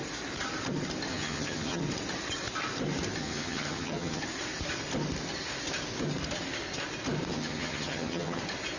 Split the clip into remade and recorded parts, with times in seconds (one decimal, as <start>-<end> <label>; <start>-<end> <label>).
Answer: 0.0-1.1 recorded; 1.1-1.8 remade; 1.8-3.2 recorded; 3.2-4.2 remade; 4.2-7.3 recorded; 7.3-8.4 remade; 8.4-8.8 recorded